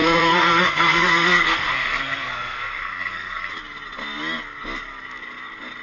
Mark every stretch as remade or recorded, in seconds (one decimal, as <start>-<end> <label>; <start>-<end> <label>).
0.0-3.5 remade; 3.5-5.8 recorded